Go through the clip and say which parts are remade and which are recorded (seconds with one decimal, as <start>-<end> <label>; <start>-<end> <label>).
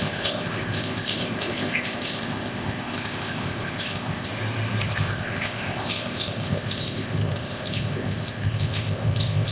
0.0-4.3 remade; 4.3-4.8 recorded; 4.8-9.5 remade